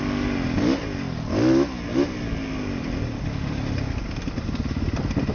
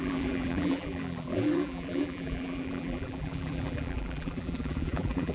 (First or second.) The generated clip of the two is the second